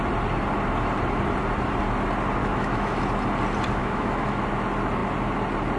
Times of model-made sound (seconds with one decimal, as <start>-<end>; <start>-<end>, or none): 2.4-3.0; 3.8-4.4